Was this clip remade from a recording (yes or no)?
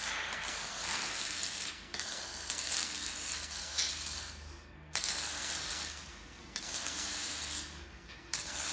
yes